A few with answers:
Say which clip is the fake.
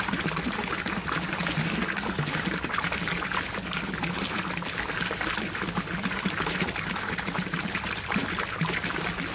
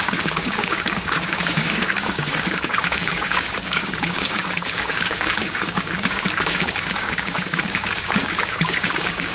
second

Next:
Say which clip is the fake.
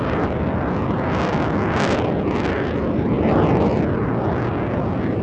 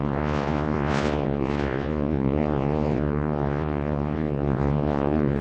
second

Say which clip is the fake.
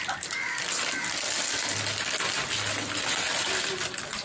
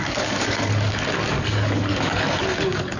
second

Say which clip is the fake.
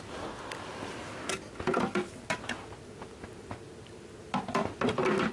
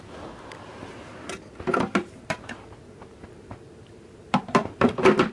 second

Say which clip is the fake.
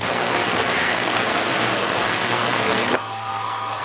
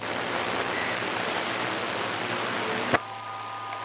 first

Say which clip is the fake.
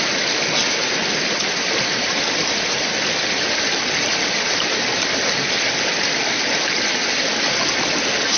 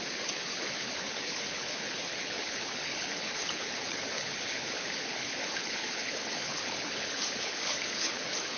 second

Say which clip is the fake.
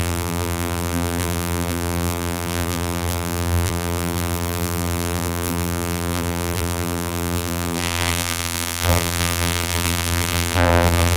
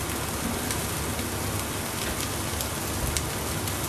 first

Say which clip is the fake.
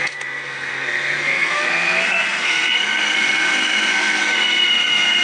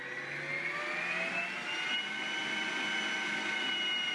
first